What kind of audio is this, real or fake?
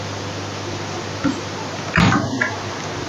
real